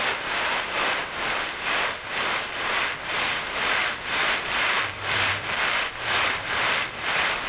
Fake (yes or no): no